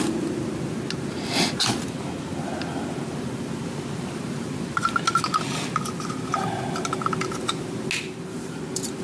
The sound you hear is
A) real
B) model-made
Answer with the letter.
A